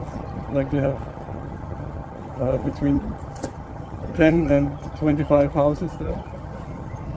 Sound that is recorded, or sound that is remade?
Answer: remade